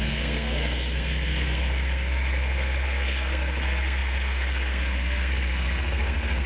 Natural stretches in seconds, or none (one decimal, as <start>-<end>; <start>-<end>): none